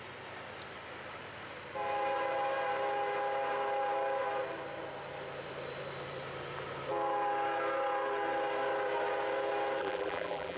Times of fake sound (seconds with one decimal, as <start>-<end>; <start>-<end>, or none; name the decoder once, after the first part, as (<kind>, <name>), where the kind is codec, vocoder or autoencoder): 9.8-10.6 (vocoder, BigVGAN v2)